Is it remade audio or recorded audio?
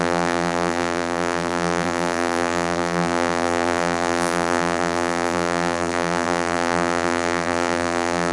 remade